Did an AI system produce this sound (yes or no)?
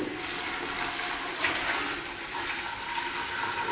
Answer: no